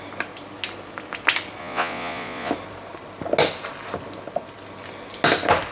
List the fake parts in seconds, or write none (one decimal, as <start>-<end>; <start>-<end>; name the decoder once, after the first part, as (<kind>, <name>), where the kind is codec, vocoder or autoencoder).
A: 1.6-2.5 (vocoder, Vocos)